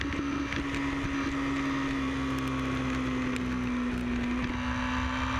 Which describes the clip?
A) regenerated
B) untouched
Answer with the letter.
B